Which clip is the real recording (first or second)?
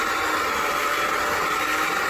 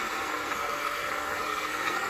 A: first